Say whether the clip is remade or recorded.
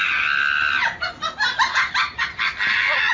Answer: recorded